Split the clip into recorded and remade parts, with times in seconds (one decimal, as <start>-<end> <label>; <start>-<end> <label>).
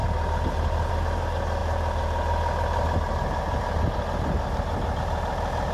0.0-5.7 recorded